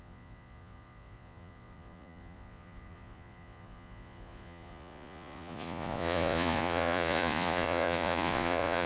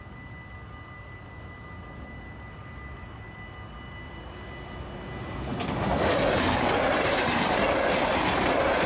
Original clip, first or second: second